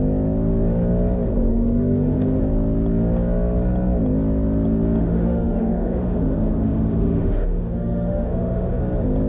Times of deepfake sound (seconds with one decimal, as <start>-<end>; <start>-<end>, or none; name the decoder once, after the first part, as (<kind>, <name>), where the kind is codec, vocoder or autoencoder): 1.5-2.4 (autoencoder, DAC-VAE); 5.0-8.8